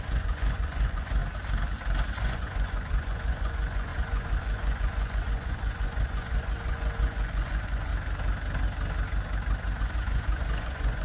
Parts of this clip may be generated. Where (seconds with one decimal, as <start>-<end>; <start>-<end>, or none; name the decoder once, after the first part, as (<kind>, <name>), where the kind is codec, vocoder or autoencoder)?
0.0-1.2 (vocoder, Vocos); 2.2-7.9; 9.8-11.0